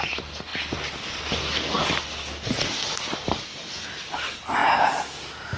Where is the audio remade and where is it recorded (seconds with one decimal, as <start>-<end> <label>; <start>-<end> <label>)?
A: 0.0-4.6 recorded; 4.6-5.6 remade